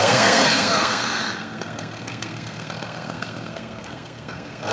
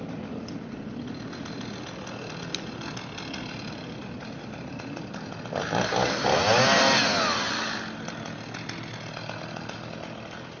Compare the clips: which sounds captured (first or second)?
second